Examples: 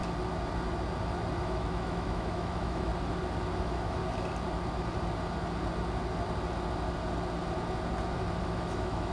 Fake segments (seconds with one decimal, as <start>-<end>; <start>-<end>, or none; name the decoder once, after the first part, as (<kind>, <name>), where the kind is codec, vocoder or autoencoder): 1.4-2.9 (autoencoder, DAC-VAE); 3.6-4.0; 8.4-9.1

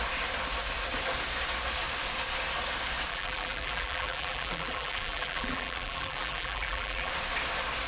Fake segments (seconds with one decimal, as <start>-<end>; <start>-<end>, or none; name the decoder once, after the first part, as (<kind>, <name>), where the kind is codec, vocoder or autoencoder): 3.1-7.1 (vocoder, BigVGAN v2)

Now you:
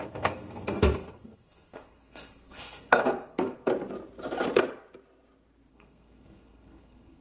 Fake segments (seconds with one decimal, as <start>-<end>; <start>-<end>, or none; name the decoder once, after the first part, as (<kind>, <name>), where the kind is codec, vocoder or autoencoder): 0.0-3.7 (codec, SNAC); 5.7-7.2

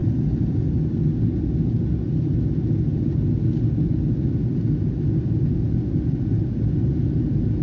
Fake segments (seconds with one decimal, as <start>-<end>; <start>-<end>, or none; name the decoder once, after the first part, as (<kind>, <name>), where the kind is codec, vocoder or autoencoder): none